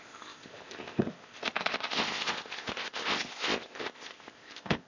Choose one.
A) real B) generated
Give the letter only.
B